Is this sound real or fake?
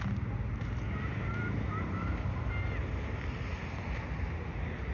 real